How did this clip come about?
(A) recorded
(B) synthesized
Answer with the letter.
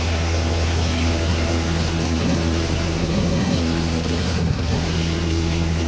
B